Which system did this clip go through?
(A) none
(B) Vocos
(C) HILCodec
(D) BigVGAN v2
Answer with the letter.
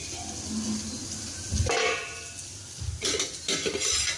A